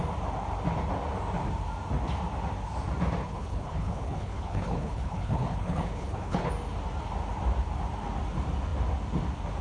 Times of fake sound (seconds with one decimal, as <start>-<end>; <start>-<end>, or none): 3.2-6.5